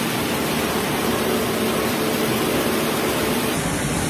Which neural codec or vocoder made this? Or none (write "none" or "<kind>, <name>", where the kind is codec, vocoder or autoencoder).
none